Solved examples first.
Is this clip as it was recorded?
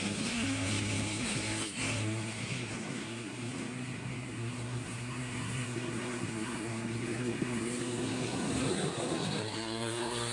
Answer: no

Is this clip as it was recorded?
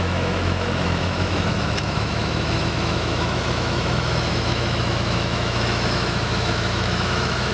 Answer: no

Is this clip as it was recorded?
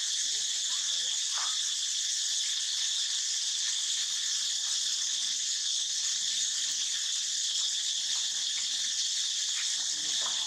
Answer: yes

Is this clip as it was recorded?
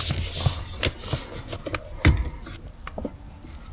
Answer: yes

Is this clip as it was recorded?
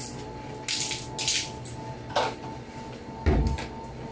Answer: yes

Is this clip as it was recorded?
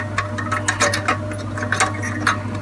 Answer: yes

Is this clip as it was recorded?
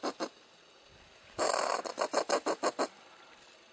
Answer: yes